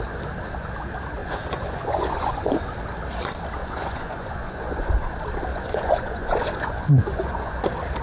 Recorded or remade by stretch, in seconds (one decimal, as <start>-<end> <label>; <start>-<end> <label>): 0.0-1.2 recorded; 1.2-2.7 remade; 2.7-3.6 recorded; 3.6-4.9 remade; 4.9-5.5 recorded; 5.5-7.6 remade; 7.6-8.0 recorded